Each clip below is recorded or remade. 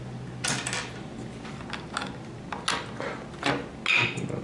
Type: recorded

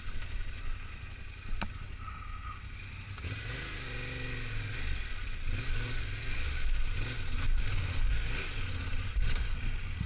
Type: recorded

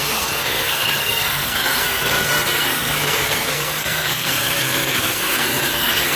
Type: remade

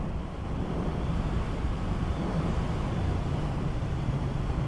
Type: remade